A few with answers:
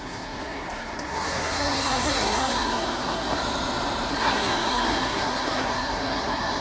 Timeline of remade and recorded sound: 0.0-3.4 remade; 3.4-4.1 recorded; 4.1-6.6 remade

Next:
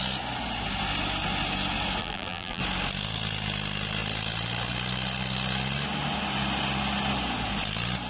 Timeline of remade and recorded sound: 0.0-2.0 recorded; 2.0-2.6 remade; 2.6-8.1 recorded

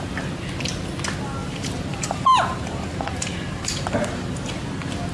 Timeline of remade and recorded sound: 0.0-1.4 recorded; 1.4-4.5 remade; 4.5-5.1 recorded

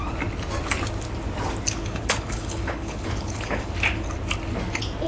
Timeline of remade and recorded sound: 0.0-1.8 recorded; 1.8-3.7 remade; 3.7-5.1 recorded

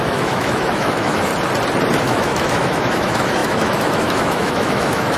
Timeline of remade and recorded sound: 0.0-1.3 remade; 1.3-2.0 recorded; 2.0-5.2 remade

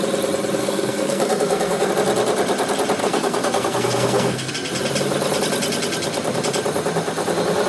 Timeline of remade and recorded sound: 0.0-0.6 recorded; 0.6-1.9 remade; 1.9-3.0 recorded; 3.0-4.5 remade; 4.5-7.7 recorded

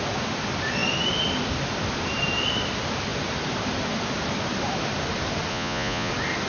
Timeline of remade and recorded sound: 0.0-5.5 recorded; 5.5-6.1 remade; 6.1-6.5 recorded

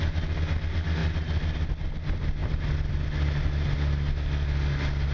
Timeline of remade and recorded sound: 0.0-5.1 recorded